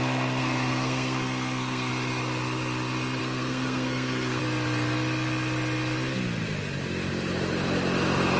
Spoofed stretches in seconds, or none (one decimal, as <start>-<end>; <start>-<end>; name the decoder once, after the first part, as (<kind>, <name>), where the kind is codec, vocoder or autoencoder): 0.4-1.9 (codec, SNAC); 3.2-4.4